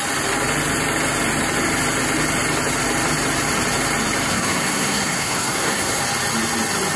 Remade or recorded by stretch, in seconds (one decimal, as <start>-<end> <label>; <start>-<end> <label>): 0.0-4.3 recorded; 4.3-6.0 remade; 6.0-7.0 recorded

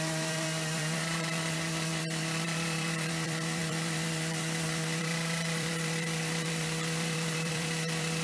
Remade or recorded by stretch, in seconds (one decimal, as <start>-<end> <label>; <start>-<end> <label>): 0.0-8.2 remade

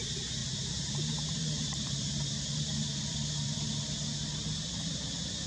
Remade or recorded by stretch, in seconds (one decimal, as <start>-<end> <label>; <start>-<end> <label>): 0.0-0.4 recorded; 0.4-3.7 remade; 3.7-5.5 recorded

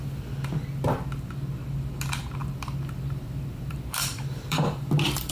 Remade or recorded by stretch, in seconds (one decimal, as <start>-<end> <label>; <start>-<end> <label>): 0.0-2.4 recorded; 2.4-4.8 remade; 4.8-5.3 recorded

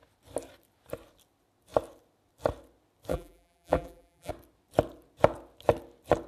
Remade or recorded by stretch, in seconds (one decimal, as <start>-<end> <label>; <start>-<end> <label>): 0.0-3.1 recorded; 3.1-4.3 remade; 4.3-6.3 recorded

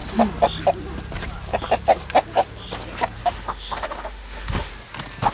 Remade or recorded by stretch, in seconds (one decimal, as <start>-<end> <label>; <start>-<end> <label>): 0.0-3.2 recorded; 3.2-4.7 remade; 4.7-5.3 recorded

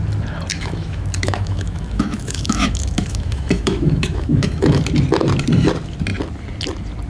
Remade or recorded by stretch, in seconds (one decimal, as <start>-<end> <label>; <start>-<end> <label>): 0.0-0.5 recorded; 0.5-4.8 remade; 4.8-7.1 recorded

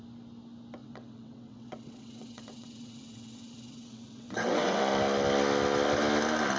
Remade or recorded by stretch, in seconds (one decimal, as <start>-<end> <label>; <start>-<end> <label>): 0.0-0.8 recorded; 0.8-4.8 remade; 4.8-6.6 recorded